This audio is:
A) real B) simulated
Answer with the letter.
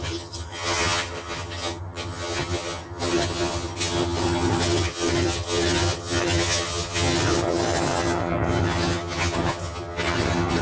B